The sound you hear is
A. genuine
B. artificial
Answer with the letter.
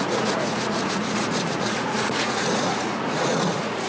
B